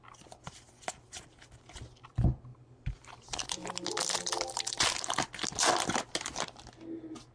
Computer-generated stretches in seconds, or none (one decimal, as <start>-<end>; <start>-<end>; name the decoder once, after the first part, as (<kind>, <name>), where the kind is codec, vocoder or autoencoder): 2.5-3.7 (vocoder, BigVGAN v2)